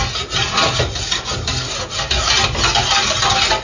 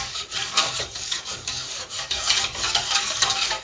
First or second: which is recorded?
first